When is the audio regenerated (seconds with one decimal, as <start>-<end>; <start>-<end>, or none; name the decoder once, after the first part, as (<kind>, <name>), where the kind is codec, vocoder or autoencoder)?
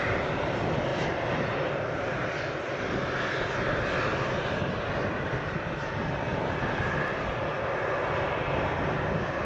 none